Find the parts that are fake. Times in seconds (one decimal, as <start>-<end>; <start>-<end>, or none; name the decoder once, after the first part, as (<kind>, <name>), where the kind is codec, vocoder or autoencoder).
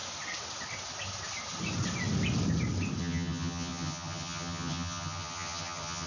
3.0-6.1 (vocoder, HiFi-GAN)